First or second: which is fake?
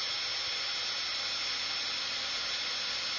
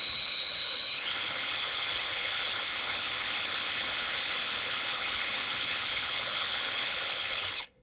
second